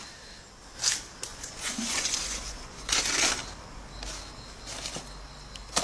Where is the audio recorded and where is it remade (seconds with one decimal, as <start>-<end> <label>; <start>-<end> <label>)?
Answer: 0.0-1.3 recorded; 1.3-3.0 remade; 3.0-5.8 recorded